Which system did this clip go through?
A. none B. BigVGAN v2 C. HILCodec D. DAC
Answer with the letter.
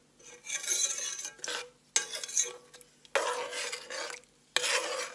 A